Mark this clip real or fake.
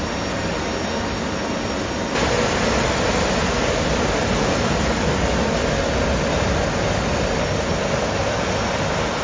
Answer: real